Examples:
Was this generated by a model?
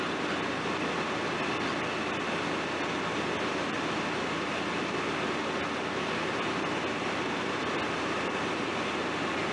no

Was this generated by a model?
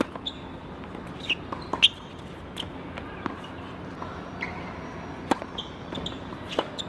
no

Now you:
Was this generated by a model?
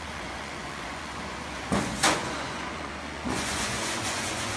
yes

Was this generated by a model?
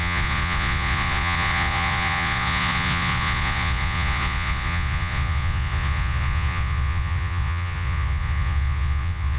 yes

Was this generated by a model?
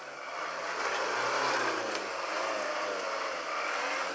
no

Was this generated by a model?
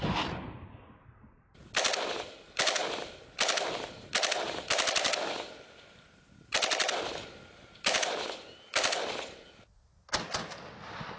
no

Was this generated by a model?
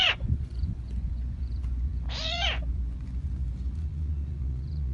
yes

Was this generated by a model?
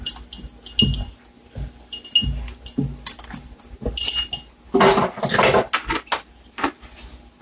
no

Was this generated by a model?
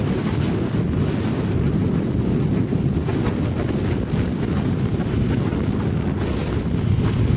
no